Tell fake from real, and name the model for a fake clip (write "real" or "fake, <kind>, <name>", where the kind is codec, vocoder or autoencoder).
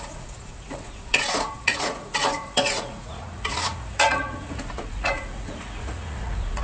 fake, vocoder, Vocos